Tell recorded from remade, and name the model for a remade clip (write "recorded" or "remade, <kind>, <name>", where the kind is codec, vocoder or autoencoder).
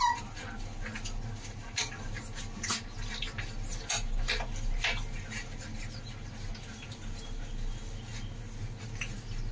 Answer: recorded